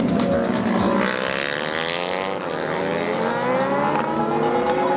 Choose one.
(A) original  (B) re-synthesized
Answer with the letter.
A